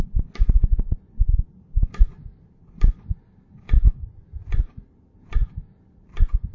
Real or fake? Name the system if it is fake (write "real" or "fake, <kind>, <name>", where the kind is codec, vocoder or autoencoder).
fake, vocoder, BigVGAN v2